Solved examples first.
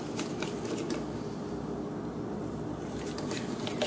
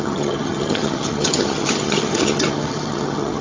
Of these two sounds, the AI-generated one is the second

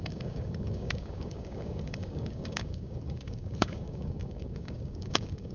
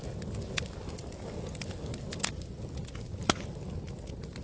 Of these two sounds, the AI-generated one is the first